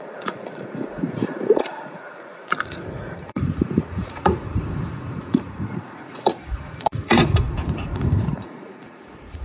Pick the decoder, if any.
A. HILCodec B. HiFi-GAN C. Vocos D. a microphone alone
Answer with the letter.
C